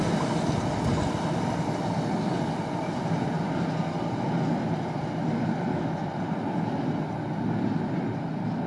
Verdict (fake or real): real